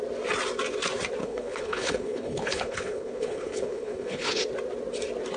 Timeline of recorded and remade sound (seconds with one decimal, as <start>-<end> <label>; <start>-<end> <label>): 0.0-1.2 recorded; 1.2-4.4 remade; 4.4-5.4 recorded